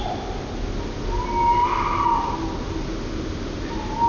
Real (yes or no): yes